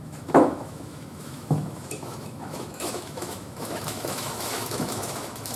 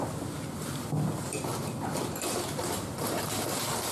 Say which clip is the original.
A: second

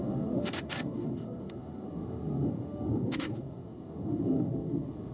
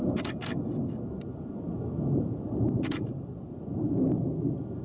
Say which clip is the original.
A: second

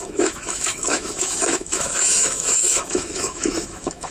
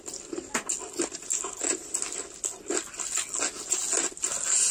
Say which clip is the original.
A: second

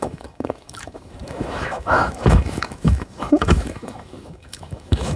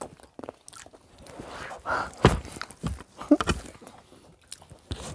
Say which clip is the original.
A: second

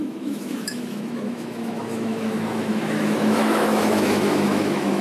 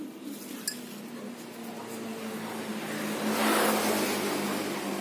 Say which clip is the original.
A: second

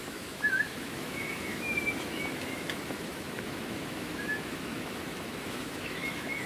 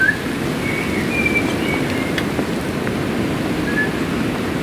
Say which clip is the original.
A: second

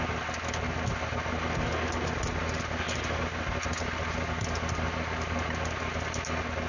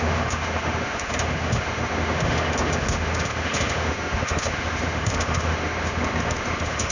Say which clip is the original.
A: first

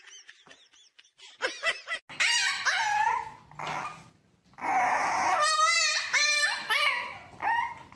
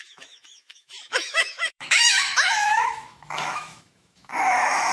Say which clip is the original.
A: first